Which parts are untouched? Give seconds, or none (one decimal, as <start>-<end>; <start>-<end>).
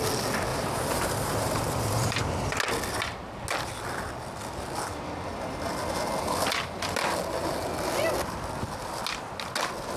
0.0-0.5; 2.2-10.0